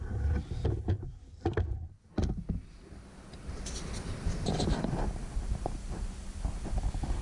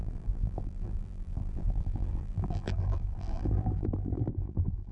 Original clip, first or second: first